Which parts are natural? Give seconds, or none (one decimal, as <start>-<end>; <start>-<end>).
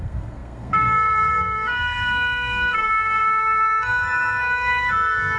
none